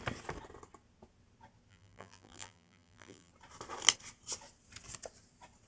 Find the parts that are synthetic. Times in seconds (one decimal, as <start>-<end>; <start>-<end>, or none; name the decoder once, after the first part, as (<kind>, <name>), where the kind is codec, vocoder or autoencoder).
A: 1.7-3.3 (vocoder, BigVGAN v2)